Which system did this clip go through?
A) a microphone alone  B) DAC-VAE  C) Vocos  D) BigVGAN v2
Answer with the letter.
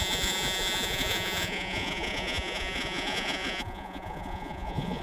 C